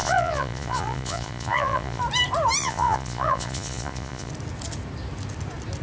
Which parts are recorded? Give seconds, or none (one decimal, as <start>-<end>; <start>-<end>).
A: 2.0-2.6; 4.3-5.8